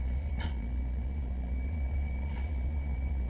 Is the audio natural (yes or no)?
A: no